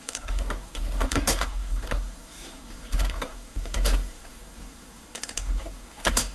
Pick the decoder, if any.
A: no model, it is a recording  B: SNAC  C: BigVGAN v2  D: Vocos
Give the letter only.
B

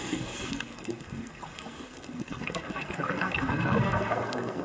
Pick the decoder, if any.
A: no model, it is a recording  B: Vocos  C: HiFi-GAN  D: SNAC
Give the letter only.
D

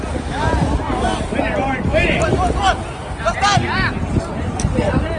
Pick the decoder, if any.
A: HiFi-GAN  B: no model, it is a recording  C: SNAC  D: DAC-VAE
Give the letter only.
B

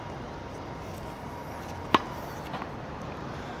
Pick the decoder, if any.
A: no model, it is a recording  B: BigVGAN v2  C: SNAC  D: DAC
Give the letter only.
A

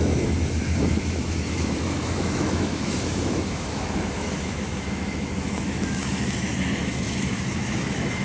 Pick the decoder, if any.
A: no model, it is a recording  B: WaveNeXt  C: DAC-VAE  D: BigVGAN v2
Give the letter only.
C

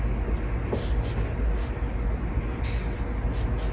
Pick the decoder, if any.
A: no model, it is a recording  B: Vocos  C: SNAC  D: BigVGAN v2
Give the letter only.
A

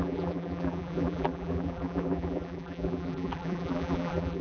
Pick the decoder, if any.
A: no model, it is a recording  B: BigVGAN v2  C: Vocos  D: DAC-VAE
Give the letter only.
B